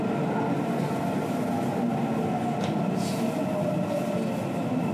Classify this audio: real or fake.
real